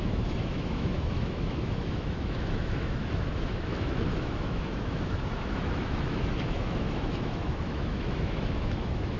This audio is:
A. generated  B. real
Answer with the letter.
A